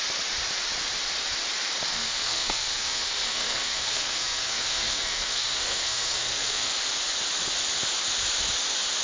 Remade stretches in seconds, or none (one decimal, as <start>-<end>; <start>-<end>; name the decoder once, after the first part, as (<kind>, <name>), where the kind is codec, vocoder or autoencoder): 1.9-6.7 (codec, SNAC)